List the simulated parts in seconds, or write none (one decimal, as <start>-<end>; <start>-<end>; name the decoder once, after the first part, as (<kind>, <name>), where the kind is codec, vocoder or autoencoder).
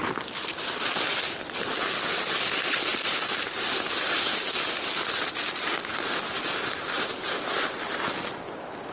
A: 2.9-8.1 (vocoder, BigVGAN v2)